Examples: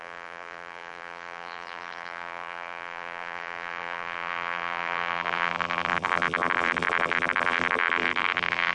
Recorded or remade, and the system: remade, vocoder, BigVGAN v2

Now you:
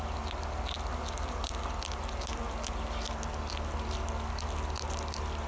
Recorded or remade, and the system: recorded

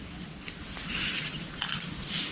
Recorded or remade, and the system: recorded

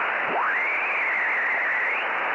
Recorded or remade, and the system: recorded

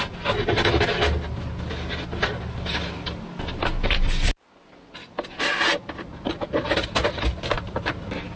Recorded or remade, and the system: recorded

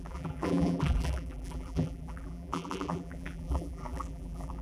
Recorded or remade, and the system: remade, vocoder, BigVGAN v2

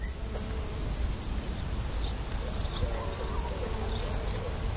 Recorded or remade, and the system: recorded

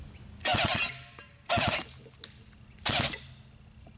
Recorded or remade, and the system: recorded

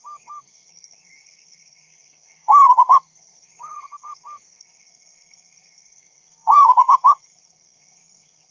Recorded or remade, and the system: remade, codec, SNAC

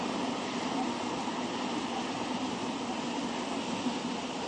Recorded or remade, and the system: recorded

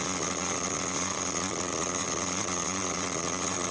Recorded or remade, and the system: remade, vocoder, Vocos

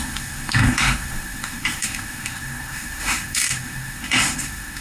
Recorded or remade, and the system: remade, autoencoder, DAC-VAE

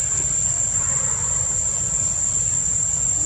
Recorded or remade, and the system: recorded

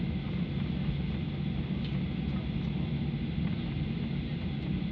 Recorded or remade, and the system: recorded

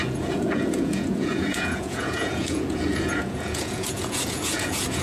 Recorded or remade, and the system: remade, vocoder, Vocos